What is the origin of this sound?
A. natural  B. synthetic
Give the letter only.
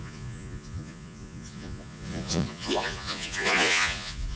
B